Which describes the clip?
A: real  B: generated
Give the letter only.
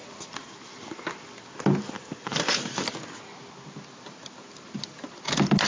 A